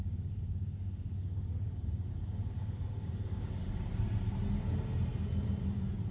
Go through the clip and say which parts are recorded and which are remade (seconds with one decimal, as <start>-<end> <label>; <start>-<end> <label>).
0.0-3.7 remade; 3.7-6.1 recorded